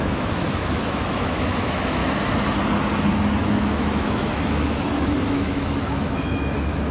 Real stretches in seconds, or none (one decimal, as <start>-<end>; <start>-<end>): 2.0-3.4